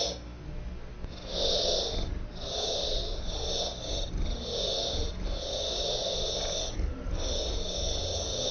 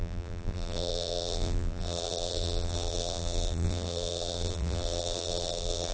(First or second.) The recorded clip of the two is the first